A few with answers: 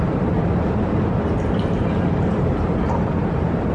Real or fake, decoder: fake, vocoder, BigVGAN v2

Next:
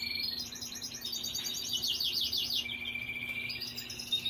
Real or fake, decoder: real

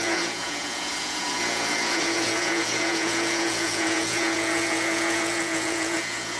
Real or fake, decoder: fake, vocoder, Vocos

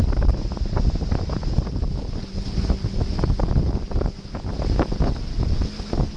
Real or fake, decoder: real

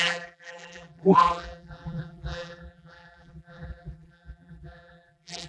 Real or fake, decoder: fake, vocoder, BigVGAN v2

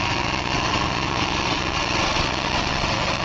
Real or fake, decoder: fake, vocoder, WaveNeXt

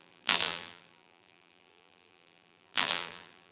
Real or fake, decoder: fake, vocoder, BigVGAN v2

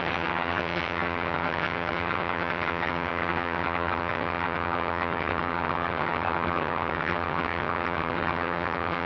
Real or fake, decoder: fake, vocoder, HiFi-GAN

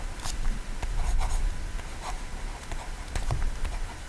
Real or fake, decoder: real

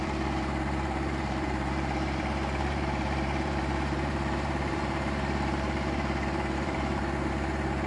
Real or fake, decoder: fake, vocoder, BigVGAN v2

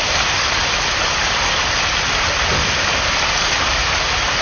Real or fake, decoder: real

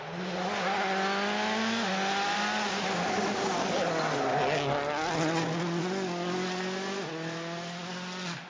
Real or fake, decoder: real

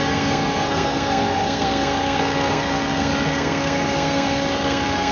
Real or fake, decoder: fake, codec, SNAC